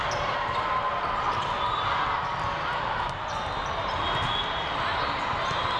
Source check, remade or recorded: recorded